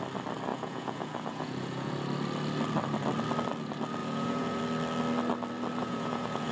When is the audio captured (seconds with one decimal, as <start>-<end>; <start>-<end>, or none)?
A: 0.0-0.5; 1.9-4.0; 4.6-5.8